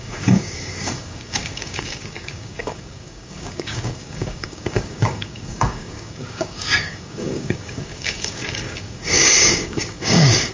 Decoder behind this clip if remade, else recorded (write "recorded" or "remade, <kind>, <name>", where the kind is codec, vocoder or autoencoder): remade, codec, DAC